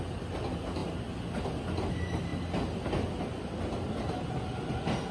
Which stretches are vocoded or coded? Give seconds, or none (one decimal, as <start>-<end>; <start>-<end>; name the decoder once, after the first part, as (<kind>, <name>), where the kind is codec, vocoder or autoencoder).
none